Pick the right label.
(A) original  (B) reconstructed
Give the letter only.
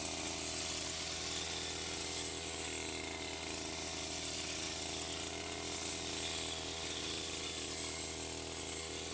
A